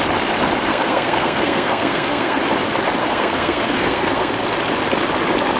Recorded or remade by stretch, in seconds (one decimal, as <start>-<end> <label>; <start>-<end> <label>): 0.0-0.7 recorded; 0.7-2.4 remade; 2.4-3.0 recorded; 3.0-4.3 remade; 4.3-5.6 recorded